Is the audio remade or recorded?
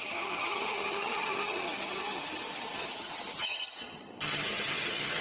remade